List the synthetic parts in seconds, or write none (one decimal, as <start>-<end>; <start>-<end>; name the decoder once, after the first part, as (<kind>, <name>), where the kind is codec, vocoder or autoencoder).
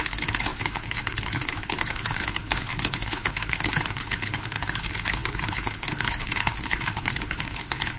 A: 0.0-8.0 (codec, HILCodec)